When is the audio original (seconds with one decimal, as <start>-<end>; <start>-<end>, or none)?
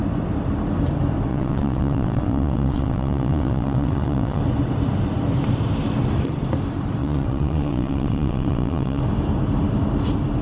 0.0-1.3; 4.4-7.0; 9.0-10.4